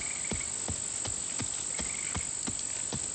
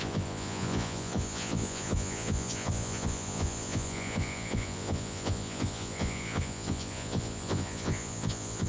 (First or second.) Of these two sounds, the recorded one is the first